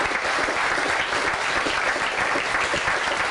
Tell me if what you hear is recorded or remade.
recorded